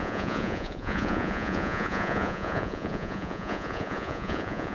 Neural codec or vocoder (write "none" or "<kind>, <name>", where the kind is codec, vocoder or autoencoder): vocoder, Vocos